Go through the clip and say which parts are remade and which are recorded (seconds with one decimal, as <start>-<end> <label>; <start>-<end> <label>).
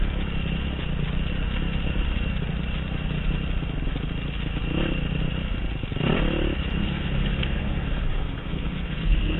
0.0-6.8 recorded; 6.8-9.4 remade